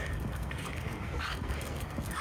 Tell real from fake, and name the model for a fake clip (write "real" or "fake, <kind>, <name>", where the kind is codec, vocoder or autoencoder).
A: fake, codec, SNAC